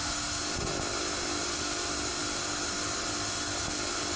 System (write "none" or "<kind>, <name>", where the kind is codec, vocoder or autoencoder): none